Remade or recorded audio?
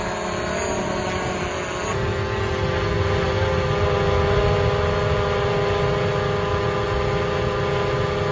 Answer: recorded